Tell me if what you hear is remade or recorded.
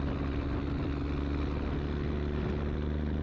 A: recorded